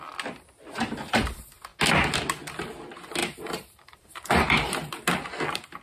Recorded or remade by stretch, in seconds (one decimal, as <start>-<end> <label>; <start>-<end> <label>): 0.0-3.2 recorded; 3.2-4.7 remade; 4.7-5.8 recorded